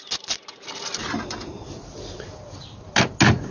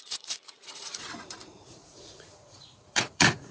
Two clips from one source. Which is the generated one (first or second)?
second